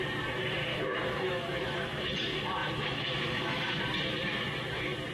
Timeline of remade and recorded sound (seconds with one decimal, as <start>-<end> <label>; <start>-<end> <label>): 0.0-0.7 recorded; 0.7-2.1 remade; 2.1-2.6 recorded; 2.6-3.8 remade; 3.8-5.1 recorded